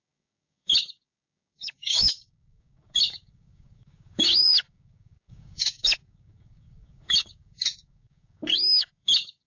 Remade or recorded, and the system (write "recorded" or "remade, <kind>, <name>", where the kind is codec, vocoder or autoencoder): remade, codec, DAC